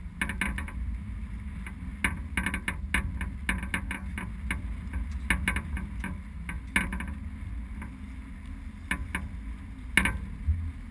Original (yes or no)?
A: yes